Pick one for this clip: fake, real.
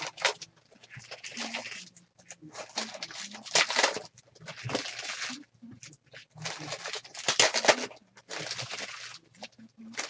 real